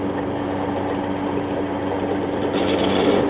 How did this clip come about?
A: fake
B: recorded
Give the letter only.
B